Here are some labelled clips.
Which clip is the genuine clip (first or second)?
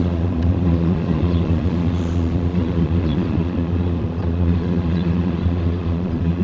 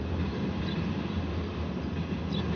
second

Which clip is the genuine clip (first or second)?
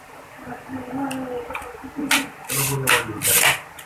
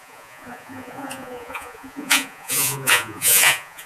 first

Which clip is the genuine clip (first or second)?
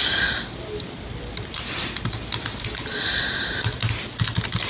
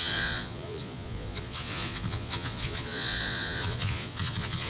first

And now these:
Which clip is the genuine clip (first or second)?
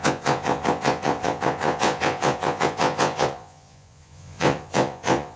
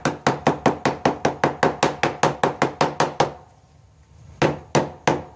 second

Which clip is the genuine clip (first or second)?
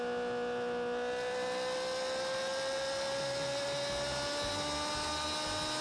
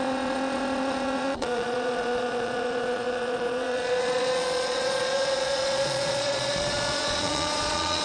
first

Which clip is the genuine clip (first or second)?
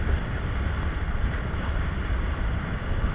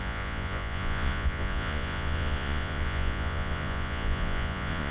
first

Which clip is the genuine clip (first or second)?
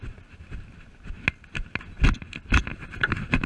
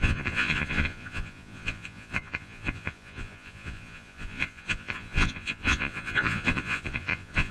first